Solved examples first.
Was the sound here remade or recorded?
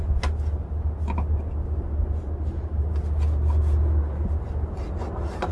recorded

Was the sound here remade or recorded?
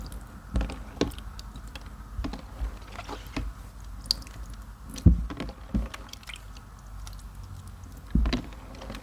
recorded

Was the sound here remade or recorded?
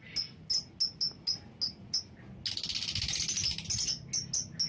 recorded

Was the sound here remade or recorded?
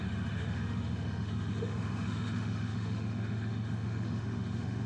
remade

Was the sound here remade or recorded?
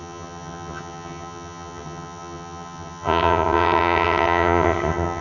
remade